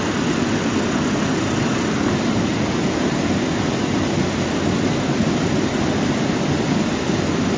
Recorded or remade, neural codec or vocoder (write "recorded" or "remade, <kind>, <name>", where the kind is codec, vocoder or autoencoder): recorded